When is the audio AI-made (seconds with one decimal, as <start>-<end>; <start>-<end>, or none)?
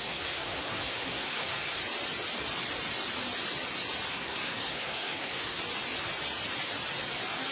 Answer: 0.0-1.8; 4.1-5.6